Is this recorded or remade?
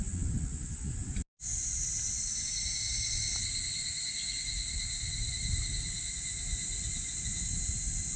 recorded